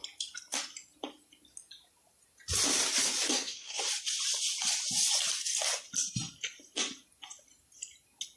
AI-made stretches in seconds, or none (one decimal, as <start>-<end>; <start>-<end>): 3.3-3.8